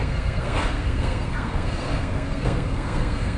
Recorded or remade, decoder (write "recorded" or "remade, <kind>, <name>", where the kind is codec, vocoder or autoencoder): remade, codec, SNAC